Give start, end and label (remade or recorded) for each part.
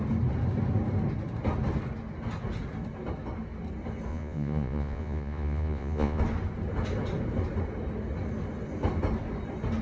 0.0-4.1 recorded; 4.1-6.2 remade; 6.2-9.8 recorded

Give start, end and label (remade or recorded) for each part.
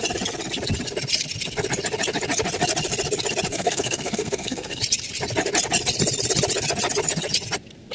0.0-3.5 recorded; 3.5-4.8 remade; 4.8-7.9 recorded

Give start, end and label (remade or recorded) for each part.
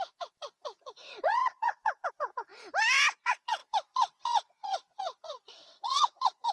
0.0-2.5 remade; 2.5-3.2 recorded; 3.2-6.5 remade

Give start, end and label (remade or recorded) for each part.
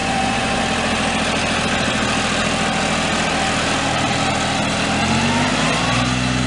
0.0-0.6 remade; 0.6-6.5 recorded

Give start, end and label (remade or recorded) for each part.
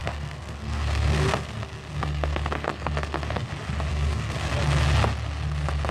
0.0-3.5 remade; 3.5-3.9 recorded; 3.9-4.5 remade; 4.5-5.9 recorded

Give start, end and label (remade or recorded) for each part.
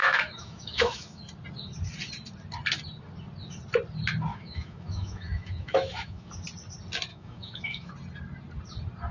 0.0-1.2 remade; 1.2-4.3 recorded; 4.3-6.3 remade; 6.3-7.1 recorded; 7.1-7.9 remade; 7.9-9.1 recorded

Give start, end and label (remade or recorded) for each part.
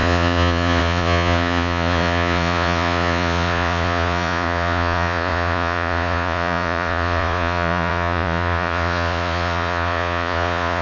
0.0-10.8 remade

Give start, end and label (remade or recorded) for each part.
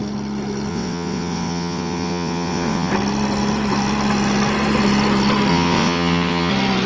0.0-0.7 recorded; 0.7-2.9 remade; 2.9-5.5 recorded; 5.5-6.5 remade; 6.5-6.9 recorded